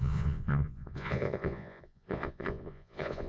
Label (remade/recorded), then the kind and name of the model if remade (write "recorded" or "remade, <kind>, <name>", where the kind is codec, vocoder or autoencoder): remade, vocoder, Vocos